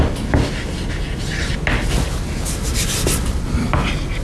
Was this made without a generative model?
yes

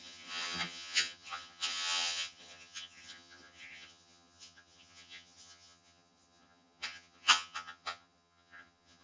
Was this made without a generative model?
no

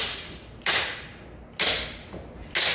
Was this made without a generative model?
yes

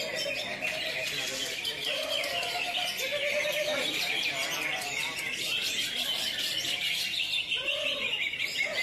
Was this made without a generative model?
no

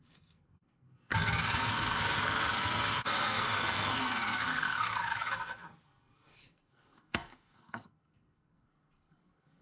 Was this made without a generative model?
no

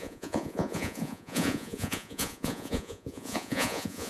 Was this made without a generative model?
no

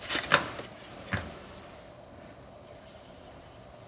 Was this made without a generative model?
yes